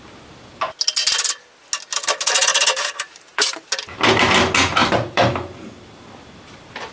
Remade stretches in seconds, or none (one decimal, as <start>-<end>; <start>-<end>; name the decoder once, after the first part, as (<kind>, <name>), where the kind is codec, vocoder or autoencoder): 2.5-3.7 (vocoder, BigVGAN v2); 4.8-5.3

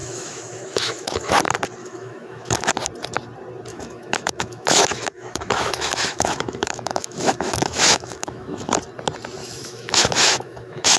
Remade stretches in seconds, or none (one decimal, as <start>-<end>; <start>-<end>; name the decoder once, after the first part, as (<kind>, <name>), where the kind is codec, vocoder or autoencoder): 0.0-1.3 (autoencoder, DAC-VAE); 1.8-2.7; 3.7-8.7; 9.4-11.0

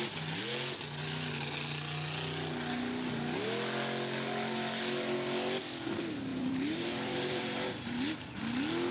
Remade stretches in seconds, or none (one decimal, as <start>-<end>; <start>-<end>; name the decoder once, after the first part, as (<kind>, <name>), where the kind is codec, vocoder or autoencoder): 6.3-8.4 (vocoder, BigVGAN v2)

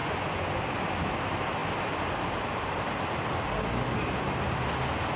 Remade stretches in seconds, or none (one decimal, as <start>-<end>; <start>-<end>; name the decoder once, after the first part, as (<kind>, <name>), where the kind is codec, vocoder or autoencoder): 0.0-0.6 (vocoder, Vocos)

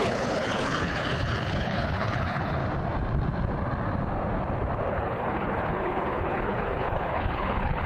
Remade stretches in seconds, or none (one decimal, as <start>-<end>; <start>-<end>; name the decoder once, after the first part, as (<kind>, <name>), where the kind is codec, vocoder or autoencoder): 0.0-2.6 (codec, HILCodec); 4.9-7.9

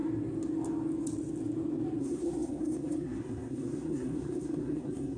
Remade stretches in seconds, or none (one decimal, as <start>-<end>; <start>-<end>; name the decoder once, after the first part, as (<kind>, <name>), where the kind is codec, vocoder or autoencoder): 2.0-5.2 (codec, SNAC)

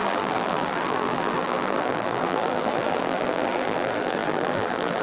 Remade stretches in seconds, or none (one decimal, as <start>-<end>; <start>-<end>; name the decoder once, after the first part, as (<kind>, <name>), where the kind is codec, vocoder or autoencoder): 0.0-5.0 (vocoder, BigVGAN v2)

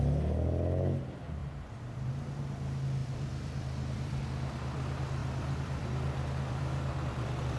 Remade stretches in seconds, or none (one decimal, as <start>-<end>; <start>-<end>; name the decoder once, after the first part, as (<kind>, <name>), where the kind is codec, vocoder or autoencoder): 1.4-2.1 (vocoder, BigVGAN v2); 3.0-4.2; 5.2-7.6